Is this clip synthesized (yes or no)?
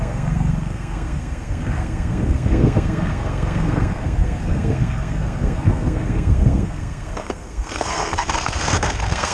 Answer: yes